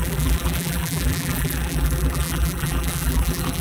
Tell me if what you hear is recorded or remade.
remade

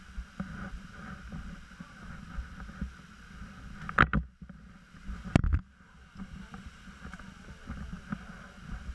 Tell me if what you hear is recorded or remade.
recorded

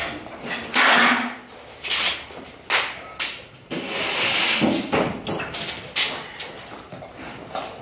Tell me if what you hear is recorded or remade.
recorded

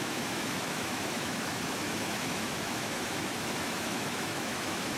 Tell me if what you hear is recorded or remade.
remade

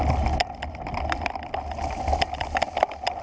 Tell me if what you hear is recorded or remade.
recorded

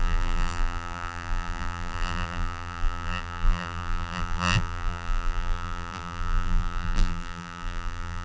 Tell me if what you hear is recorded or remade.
remade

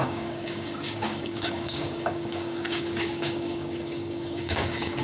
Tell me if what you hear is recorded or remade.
remade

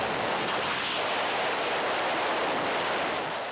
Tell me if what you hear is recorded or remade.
recorded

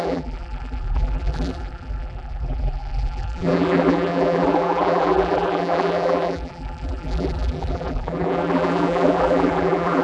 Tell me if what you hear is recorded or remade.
remade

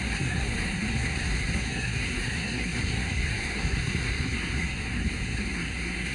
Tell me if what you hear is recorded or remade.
remade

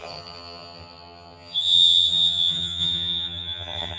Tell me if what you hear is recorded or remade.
remade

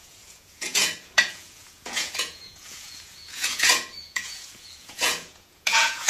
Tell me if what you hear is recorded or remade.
remade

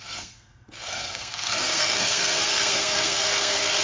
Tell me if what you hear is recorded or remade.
remade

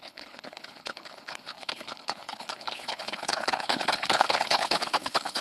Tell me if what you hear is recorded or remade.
remade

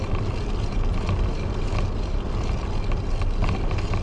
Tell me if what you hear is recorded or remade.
recorded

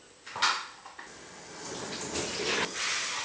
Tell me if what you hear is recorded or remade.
recorded